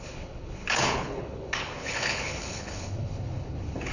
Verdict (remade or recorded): remade